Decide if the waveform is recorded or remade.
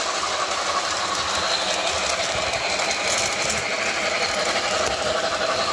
recorded